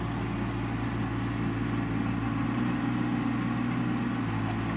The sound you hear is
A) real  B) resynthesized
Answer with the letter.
A